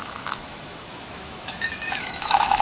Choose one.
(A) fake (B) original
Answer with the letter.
A